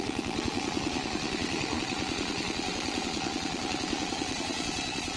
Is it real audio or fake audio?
fake